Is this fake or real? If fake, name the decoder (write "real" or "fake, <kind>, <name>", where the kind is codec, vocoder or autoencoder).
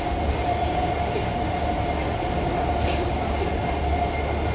real